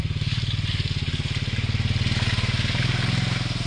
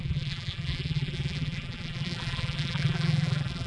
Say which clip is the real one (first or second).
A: first